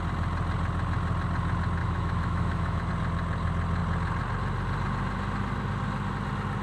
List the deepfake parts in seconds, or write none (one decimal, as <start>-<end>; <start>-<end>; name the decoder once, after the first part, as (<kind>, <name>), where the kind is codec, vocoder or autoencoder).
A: 1.8-2.9 (autoencoder, DAC-VAE)